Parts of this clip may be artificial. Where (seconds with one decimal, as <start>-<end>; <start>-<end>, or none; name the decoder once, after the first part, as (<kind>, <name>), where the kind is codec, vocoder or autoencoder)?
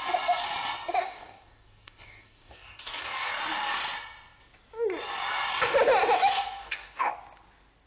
1.0-3.3 (codec, DAC); 6.6-7.1